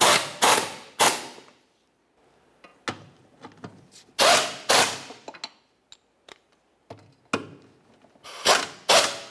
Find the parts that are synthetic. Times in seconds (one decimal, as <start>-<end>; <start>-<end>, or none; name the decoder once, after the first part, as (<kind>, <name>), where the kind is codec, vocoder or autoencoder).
none